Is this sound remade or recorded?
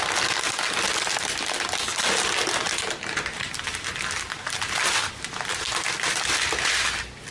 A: recorded